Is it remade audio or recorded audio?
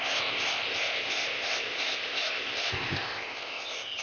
remade